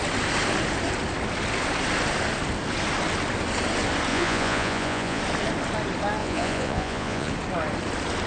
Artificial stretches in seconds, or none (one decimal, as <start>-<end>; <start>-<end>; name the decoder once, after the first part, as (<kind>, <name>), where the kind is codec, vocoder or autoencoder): 4.1-5.2 (vocoder, Vocos); 6.2-7.3